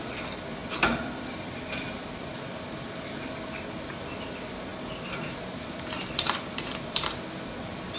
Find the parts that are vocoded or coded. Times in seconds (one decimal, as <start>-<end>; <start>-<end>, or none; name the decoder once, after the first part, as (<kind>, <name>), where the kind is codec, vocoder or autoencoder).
4.7-7.2 (vocoder, BigVGAN v2)